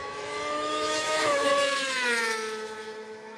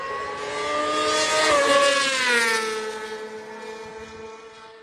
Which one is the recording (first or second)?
second